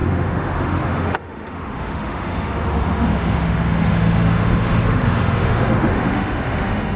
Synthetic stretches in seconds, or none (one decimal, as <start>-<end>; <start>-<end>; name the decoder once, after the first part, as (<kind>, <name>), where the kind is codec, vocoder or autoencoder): 0.0-7.0 (autoencoder, DAC-VAE)